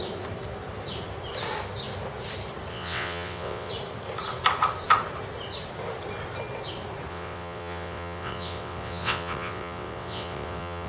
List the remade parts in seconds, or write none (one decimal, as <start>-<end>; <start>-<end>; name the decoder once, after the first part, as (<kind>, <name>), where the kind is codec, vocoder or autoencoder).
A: 2.7-3.7 (vocoder, WaveNeXt); 7.1-10.9